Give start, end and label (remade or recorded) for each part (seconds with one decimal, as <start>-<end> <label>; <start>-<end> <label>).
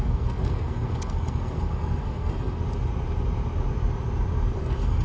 0.0-2.6 remade; 2.6-4.6 recorded; 4.6-5.0 remade